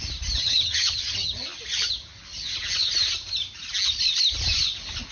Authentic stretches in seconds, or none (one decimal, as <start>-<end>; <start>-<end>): 0.0-0.4; 1.4-5.1